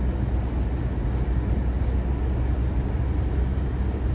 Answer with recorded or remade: recorded